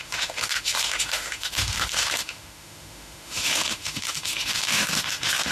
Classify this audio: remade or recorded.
remade